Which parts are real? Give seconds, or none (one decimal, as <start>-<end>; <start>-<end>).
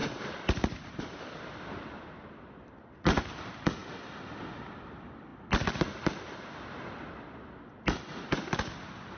3.8-4.7; 5.3-7.5